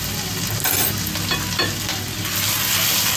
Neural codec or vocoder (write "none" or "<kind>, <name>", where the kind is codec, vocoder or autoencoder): none